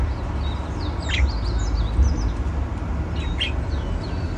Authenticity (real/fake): real